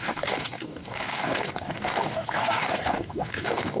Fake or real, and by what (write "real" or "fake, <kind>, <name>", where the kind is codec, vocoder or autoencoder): fake, codec, DAC